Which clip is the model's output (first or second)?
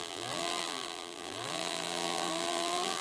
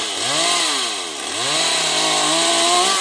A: first